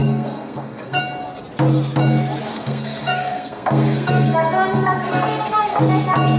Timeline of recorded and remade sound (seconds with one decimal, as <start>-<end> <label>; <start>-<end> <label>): 0.0-1.0 remade; 1.0-2.5 recorded; 2.5-5.8 remade; 5.8-6.4 recorded